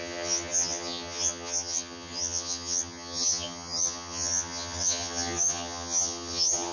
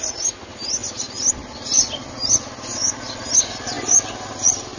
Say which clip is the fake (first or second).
first